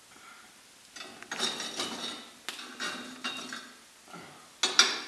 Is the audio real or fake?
real